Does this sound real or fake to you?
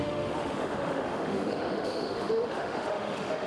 fake